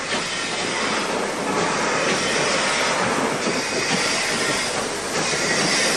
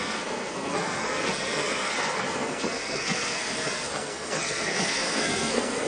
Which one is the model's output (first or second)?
second